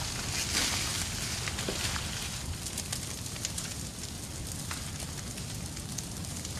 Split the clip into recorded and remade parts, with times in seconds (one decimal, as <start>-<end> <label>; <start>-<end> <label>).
0.0-6.6 recorded